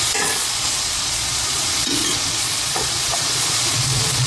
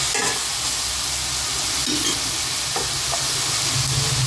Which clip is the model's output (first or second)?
first